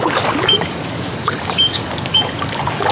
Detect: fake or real fake